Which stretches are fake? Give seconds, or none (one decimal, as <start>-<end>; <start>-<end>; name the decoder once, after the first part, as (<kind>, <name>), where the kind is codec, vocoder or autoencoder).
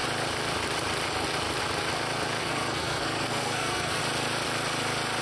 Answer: 2.4-4.0 (codec, SNAC)